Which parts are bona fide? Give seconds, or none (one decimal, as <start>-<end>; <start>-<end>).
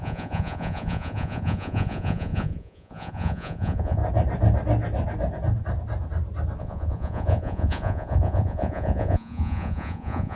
4.0-6.6